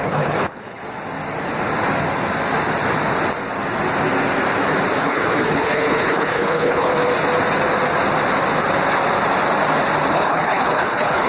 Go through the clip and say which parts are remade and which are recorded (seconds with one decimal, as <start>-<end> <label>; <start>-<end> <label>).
0.0-0.8 remade; 0.8-5.0 recorded; 5.0-6.9 remade; 6.9-10.1 recorded; 10.1-11.3 remade